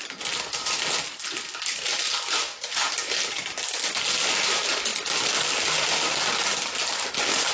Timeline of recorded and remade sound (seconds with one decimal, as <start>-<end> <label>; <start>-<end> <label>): 0.0-7.5 recorded